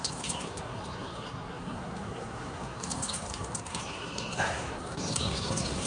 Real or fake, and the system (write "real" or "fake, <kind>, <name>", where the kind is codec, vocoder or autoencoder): fake, codec, SNAC